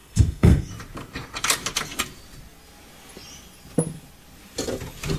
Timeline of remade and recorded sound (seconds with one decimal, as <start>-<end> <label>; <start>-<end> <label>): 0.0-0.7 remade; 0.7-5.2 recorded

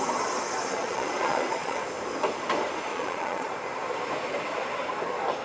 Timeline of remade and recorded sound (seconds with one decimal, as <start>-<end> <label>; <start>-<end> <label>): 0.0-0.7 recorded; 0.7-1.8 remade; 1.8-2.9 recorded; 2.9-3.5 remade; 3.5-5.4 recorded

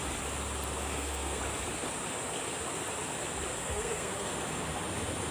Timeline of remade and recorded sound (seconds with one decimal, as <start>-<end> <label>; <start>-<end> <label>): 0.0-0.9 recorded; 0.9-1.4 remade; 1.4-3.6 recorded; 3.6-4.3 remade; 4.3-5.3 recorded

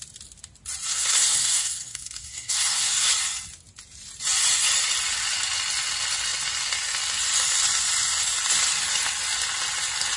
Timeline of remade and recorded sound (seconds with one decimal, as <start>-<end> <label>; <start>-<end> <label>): 0.0-0.9 recorded; 0.9-3.1 remade; 3.1-10.2 recorded

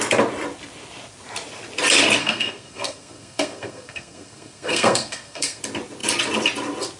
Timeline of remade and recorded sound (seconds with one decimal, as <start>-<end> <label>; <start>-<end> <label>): 0.0-2.2 recorded; 2.2-5.6 remade; 5.6-7.0 recorded

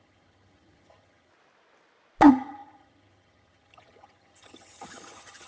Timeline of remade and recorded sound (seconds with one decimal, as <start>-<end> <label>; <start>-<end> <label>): 0.0-1.3 remade; 1.3-2.3 recorded; 2.3-5.5 remade

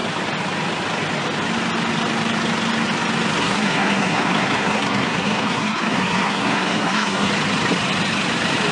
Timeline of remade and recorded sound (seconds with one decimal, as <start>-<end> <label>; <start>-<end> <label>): 0.0-3.4 recorded; 3.4-7.3 remade; 7.3-8.7 recorded

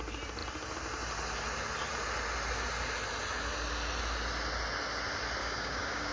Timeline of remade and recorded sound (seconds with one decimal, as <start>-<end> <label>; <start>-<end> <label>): 0.0-5.4 recorded; 5.4-6.1 remade